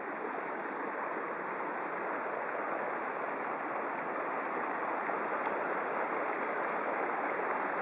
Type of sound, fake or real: real